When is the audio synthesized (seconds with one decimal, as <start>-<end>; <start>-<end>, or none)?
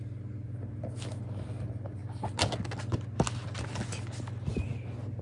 none